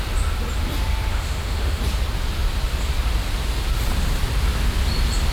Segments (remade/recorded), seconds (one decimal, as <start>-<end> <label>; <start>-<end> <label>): 0.0-1.1 recorded; 1.1-1.8 remade; 1.8-5.3 recorded